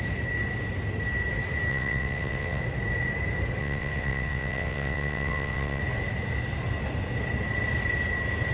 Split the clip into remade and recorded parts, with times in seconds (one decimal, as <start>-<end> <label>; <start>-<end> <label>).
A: 0.0-1.7 recorded; 1.7-2.6 remade; 2.6-3.6 recorded; 3.6-5.8 remade; 5.8-8.5 recorded